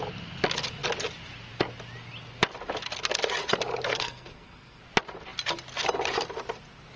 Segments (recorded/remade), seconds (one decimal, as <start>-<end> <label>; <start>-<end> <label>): 0.0-3.9 recorded; 3.9-4.8 remade; 4.8-7.0 recorded